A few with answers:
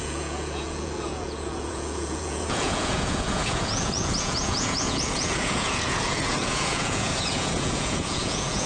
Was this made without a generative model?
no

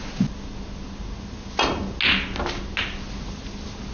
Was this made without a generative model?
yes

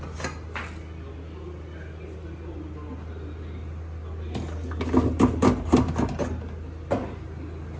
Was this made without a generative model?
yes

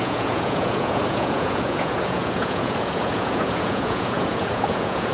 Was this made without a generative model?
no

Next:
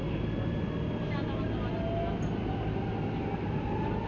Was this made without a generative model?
yes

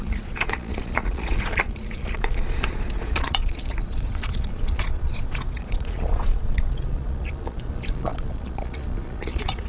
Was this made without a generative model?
no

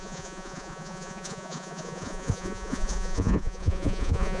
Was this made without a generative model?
no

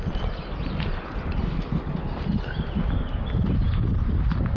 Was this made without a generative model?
yes